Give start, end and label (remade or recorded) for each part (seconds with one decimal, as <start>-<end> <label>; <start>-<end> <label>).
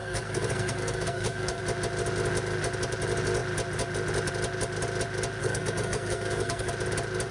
0.0-1.6 remade; 1.6-5.4 recorded; 5.4-6.7 remade; 6.7-7.3 recorded